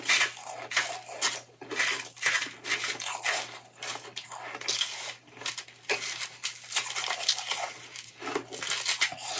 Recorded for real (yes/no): yes